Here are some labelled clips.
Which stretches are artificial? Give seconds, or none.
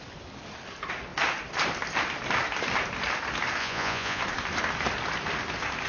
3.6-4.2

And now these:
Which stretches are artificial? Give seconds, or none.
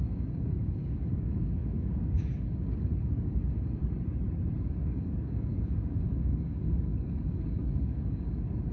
0.0-3.8; 4.8-8.7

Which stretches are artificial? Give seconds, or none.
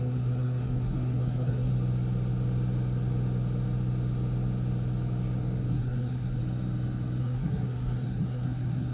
0.0-1.7; 5.7-6.4; 7.2-8.9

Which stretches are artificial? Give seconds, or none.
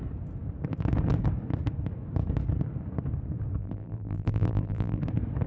3.6-5.0